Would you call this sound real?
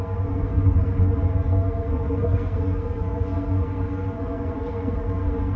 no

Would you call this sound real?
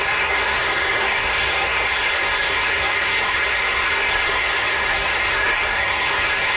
no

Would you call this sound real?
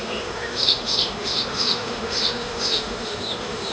no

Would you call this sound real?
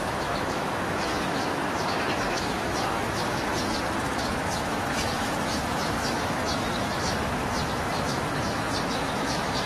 no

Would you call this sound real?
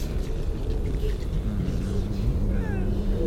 yes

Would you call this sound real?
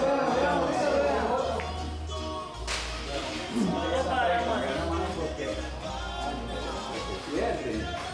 yes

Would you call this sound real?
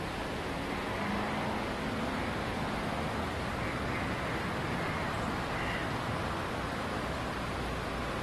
yes